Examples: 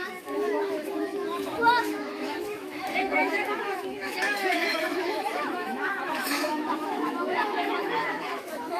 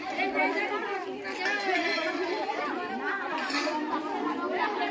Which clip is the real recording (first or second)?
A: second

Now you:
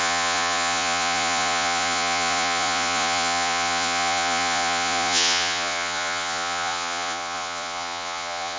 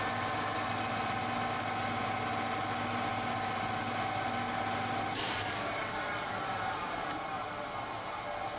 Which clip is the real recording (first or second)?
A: second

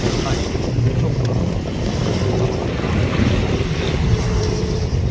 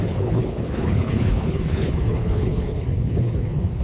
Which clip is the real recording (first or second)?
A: first